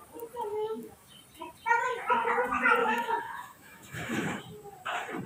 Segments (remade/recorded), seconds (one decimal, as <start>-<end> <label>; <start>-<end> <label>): 0.0-0.5 recorded; 0.5-1.1 remade; 1.1-2.8 recorded; 2.8-4.4 remade; 4.4-5.3 recorded